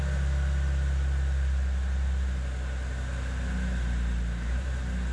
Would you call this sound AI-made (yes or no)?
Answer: no